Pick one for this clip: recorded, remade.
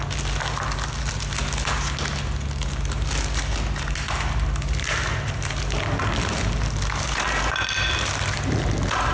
recorded